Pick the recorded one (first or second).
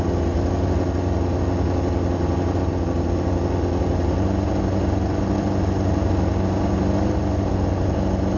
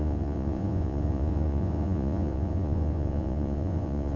first